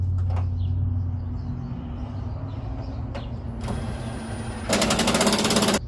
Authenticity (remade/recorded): recorded